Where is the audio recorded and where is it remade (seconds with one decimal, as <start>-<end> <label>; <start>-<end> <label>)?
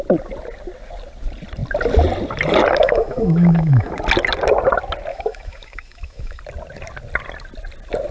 0.0-2.8 recorded; 2.8-3.9 remade; 3.9-5.1 recorded; 5.1-6.4 remade; 6.4-8.1 recorded